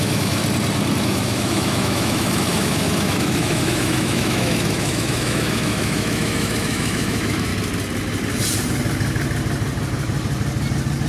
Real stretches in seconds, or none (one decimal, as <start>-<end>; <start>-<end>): 0.4-1.0; 7.5-11.1